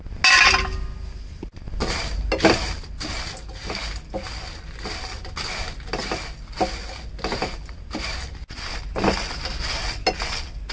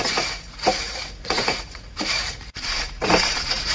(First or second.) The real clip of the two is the first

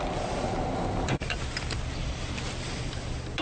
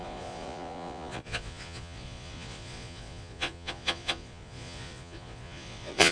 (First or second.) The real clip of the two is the first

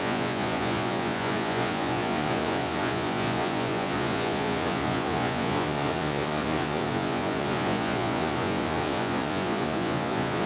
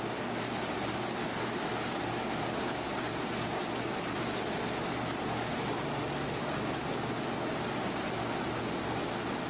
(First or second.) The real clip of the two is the second